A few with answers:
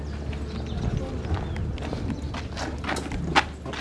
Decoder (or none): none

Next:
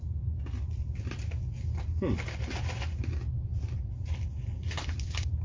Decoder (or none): none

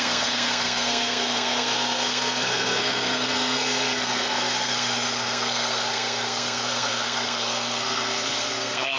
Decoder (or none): codec, SNAC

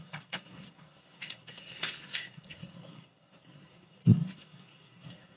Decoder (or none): codec, SNAC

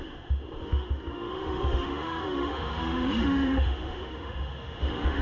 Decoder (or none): autoencoder, DAC-VAE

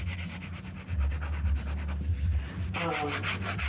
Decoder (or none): none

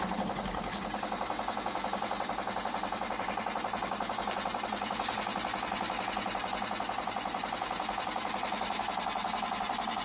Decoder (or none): none